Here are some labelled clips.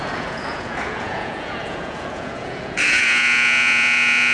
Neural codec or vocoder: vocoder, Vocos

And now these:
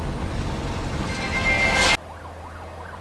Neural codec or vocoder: none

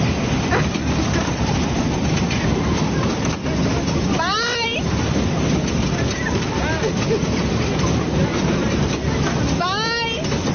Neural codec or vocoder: none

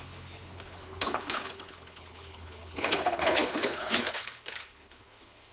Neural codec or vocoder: codec, HILCodec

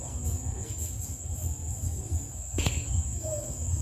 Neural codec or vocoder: codec, SNAC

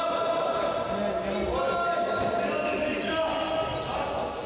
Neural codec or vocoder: none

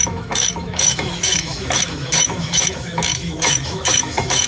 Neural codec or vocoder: autoencoder, DAC-VAE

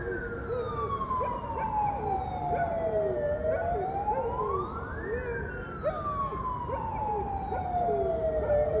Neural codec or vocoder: none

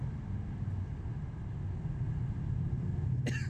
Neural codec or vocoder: none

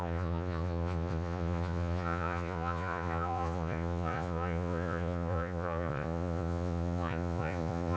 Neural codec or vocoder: vocoder, Vocos